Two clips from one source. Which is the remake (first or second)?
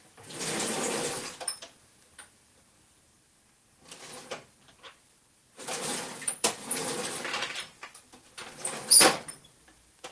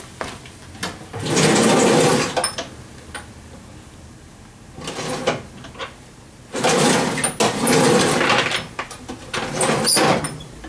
first